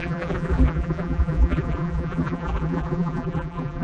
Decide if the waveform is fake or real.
fake